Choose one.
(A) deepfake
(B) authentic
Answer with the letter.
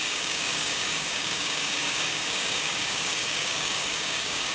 A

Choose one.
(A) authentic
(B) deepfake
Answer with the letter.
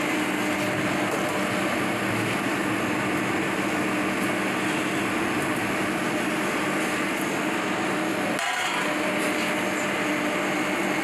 A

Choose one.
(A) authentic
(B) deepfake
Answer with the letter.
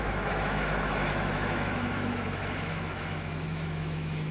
B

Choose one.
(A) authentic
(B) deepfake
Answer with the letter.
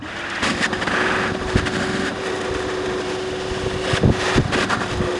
A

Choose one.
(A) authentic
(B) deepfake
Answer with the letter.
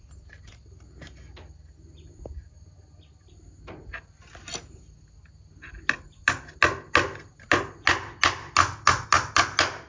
A